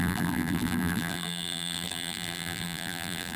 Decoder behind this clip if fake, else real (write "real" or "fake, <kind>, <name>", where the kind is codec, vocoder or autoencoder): fake, vocoder, BigVGAN v2